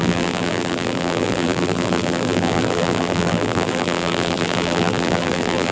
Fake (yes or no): yes